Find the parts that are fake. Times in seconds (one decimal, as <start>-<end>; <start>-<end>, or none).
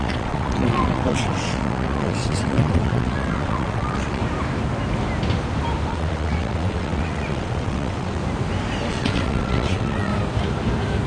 0.0-4.2; 5.9-8.2; 8.9-10.1